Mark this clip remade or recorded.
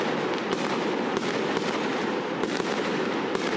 recorded